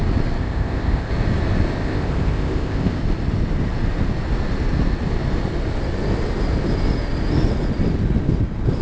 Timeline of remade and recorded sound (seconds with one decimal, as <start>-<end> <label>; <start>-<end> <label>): 0.0-0.4 recorded; 0.4-1.1 remade; 1.1-1.8 recorded; 1.8-3.0 remade; 3.0-8.8 recorded